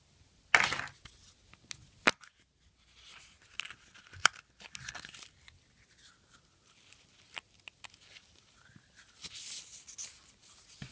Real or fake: real